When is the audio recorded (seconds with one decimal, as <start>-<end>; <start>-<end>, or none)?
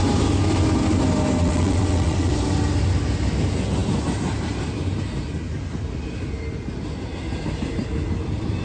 0.0-1.4; 2.3-8.6